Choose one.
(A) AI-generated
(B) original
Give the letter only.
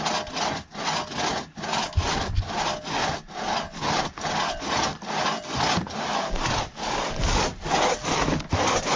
B